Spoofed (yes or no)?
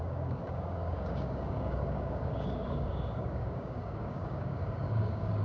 yes